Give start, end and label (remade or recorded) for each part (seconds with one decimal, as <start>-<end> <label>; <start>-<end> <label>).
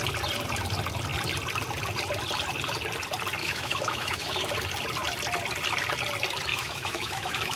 0.0-3.4 recorded; 3.4-4.5 remade; 4.5-6.5 recorded; 6.5-7.6 remade